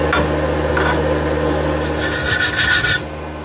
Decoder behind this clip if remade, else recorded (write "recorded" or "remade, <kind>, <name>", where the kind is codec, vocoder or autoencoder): recorded